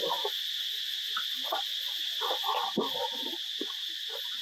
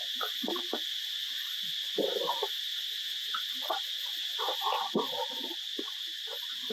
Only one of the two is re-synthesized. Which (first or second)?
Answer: second